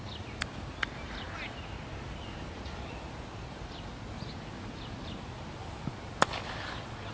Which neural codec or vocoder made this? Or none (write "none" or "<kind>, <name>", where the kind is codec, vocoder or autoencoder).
none